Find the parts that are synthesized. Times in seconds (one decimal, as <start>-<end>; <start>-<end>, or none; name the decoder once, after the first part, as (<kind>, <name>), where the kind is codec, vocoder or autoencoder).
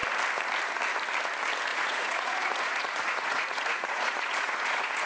1.7-5.1 (vocoder, Vocos)